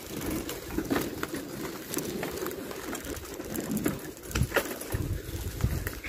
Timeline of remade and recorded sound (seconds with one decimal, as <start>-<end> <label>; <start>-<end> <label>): 0.0-1.1 recorded; 1.1-4.2 remade; 4.2-6.1 recorded